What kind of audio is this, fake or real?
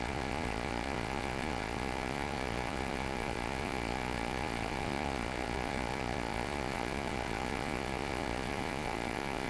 fake